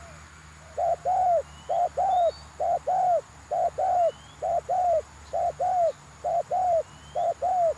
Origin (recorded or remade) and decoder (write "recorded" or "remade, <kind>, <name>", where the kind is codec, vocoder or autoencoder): recorded